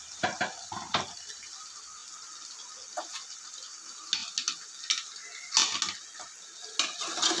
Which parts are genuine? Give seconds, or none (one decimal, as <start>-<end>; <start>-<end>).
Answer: 0.0-7.4